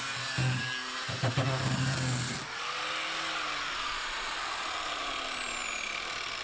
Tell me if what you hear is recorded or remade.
recorded